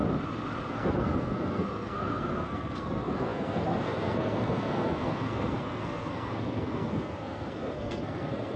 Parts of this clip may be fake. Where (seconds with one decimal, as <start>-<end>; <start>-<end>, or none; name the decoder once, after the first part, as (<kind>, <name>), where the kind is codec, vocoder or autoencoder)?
0.7-8.6 (codec, SNAC)